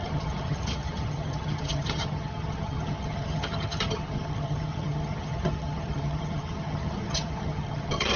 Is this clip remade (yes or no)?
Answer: yes